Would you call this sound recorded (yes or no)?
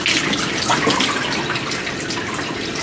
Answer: yes